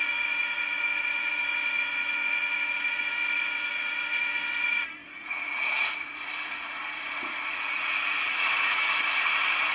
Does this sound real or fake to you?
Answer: fake